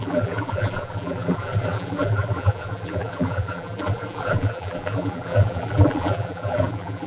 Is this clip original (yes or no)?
no